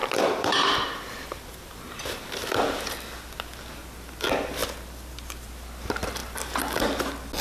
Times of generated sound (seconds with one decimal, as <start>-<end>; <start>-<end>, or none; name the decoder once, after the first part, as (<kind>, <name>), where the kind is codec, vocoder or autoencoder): 0.0-2.8 (vocoder, BigVGAN v2)